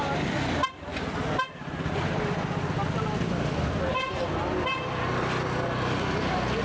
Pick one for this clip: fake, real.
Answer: real